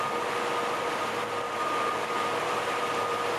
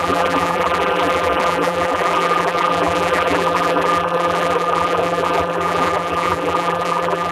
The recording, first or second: first